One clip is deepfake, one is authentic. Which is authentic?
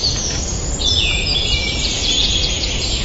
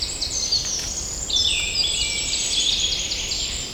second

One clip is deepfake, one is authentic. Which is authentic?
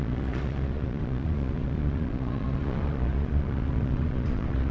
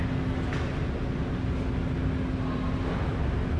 second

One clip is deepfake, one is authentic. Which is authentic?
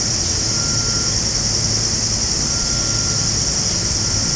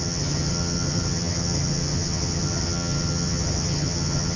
first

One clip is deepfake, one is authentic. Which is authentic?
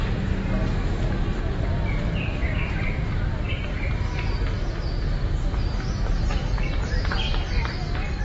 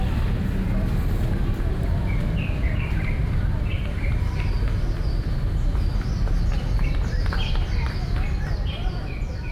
first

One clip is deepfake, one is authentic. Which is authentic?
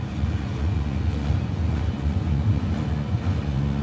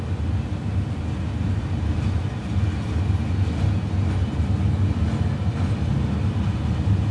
second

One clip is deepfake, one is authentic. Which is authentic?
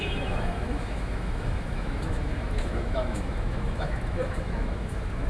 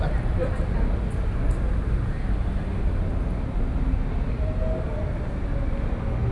second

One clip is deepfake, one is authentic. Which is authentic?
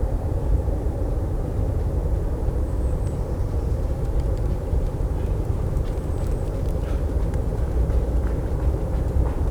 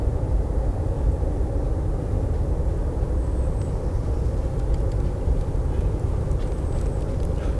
second